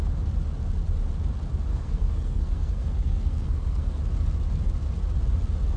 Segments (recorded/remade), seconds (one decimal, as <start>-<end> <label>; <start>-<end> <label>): 0.0-1.7 recorded; 1.7-4.0 remade; 4.0-5.8 recorded